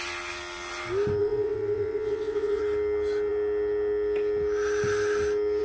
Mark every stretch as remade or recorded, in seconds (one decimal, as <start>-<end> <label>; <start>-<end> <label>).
0.0-1.2 recorded; 1.2-2.6 remade; 2.6-5.6 recorded